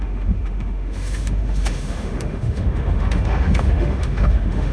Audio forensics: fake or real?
fake